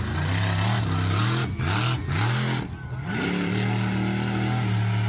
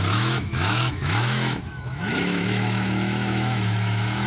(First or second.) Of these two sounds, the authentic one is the first